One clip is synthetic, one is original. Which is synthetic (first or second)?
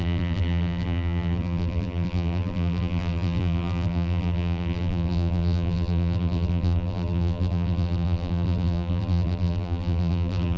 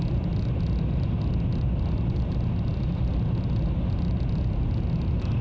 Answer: first